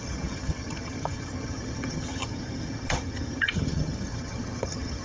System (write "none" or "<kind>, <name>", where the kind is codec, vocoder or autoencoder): vocoder, HiFi-GAN